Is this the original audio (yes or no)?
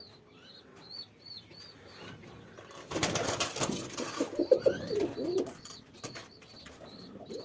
yes